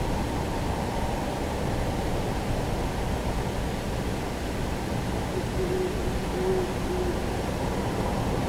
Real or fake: real